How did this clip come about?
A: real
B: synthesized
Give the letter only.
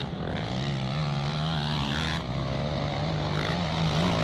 A